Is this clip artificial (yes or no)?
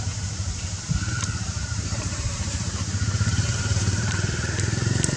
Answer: yes